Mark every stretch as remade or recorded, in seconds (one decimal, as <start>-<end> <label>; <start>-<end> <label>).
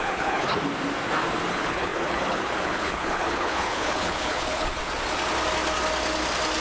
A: 0.0-0.5 remade; 0.5-1.5 recorded; 1.5-4.8 remade; 4.8-6.6 recorded